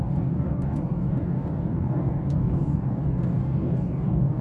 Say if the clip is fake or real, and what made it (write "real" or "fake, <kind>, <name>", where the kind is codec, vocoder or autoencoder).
fake, codec, DAC